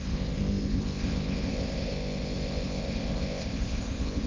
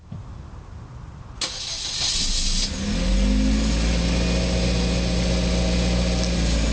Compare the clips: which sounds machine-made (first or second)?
first